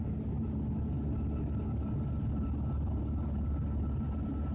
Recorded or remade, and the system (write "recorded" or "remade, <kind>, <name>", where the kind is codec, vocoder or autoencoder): recorded